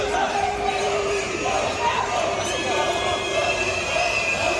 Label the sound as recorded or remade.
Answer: remade